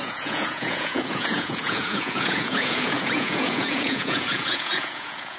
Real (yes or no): no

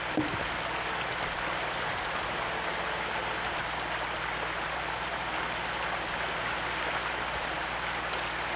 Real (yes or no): yes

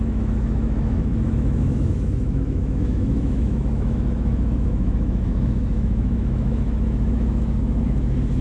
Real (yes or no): no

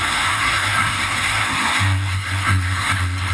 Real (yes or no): no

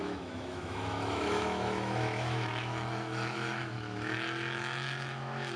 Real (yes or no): no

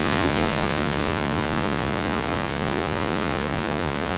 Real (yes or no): no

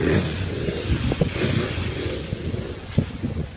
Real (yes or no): no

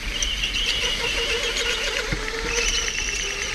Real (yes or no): yes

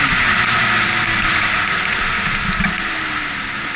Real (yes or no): yes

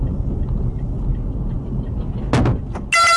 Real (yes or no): yes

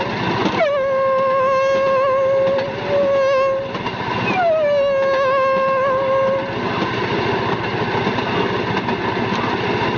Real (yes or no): yes